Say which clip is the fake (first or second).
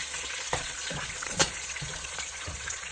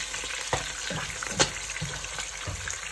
first